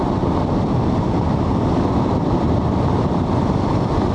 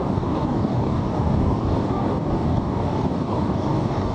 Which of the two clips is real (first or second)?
first